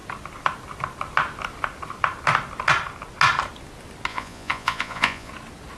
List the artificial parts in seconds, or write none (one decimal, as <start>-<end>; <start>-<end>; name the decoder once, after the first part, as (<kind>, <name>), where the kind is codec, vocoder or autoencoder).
4.1-5.3 (vocoder, Vocos)